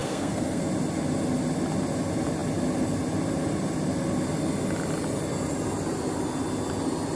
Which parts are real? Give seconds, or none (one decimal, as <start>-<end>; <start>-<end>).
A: 0.6-7.2